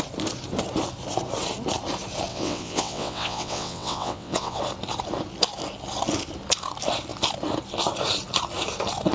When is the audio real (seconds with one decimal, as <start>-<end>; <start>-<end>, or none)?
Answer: 0.0-2.3; 4.6-9.1